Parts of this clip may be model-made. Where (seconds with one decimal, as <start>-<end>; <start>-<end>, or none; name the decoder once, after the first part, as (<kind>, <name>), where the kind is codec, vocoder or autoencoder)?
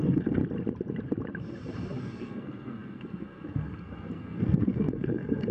0.0-0.4 (codec, SNAC); 2.0-5.5